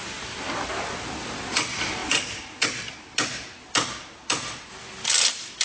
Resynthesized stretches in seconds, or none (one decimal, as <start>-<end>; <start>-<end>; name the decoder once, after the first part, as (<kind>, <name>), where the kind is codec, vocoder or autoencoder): none

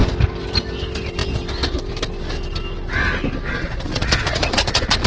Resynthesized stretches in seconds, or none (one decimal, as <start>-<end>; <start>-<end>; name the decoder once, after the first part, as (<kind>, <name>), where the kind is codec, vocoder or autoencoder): 3.5-5.1 (vocoder, Vocos)